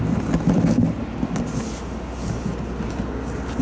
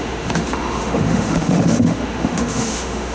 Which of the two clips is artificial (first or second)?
second